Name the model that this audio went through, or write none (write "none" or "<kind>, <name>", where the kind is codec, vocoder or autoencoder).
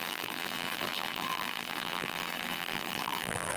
vocoder, BigVGAN v2